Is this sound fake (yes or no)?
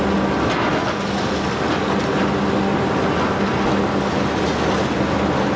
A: no